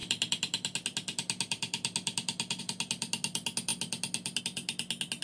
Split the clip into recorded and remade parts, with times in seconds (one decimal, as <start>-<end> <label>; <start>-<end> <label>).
0.0-5.2 recorded